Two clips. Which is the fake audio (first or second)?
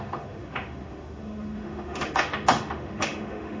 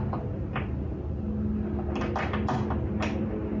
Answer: first